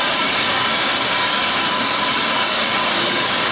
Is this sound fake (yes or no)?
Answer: yes